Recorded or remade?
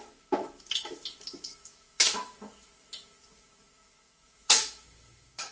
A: remade